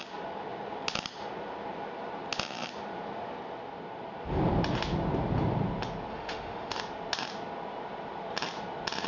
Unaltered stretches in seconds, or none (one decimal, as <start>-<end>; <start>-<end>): 0.0-6.1; 6.8-9.1